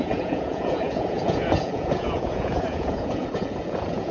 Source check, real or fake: fake